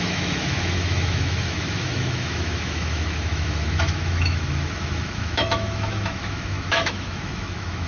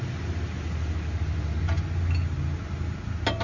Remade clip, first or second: first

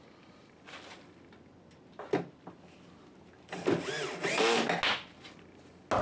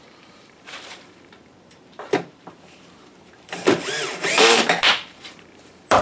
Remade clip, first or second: second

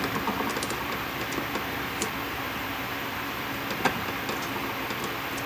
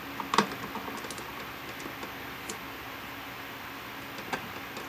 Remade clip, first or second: first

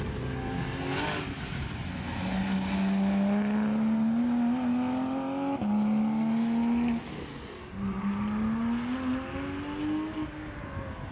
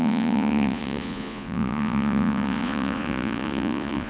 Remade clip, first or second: second